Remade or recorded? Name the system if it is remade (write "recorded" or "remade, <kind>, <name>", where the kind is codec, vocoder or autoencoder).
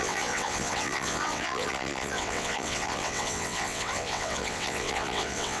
remade, vocoder, WaveNeXt